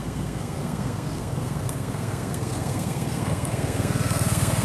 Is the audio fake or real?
fake